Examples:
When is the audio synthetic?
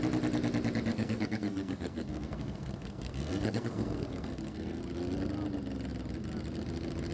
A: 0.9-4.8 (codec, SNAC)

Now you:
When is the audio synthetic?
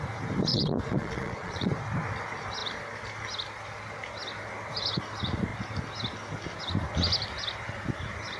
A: 0.5-1.7 (vocoder, Vocos)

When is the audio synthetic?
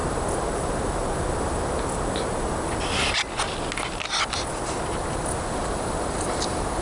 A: none